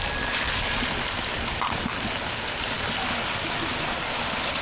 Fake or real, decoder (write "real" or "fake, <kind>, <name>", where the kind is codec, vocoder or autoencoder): real